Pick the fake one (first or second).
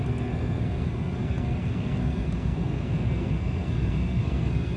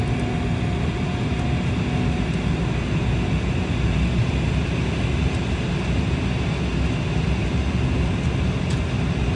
first